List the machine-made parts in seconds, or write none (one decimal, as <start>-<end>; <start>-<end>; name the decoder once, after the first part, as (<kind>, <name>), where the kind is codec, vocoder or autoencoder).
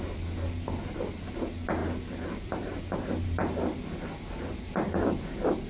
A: none